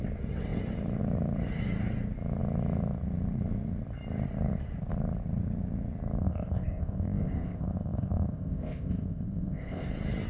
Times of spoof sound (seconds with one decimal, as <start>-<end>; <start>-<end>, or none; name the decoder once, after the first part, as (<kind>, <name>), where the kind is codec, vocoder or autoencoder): 6.2-9.9 (codec, ZipCodec)